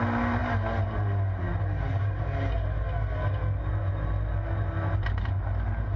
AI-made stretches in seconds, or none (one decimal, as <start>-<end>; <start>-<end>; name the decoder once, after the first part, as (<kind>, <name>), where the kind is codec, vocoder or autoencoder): none